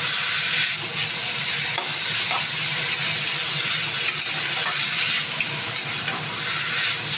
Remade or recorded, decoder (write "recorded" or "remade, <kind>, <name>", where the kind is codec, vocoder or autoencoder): recorded